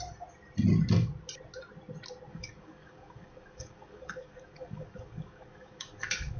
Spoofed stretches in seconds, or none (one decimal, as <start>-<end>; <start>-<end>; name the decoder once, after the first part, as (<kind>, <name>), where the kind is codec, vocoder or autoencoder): 2.3-6.4 (codec, DAC)